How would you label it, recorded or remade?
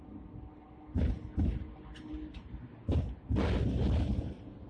recorded